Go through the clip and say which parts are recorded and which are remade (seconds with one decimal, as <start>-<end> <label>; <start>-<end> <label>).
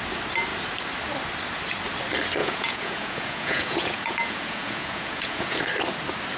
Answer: 0.0-2.4 recorded; 2.4-5.6 remade; 5.6-6.4 recorded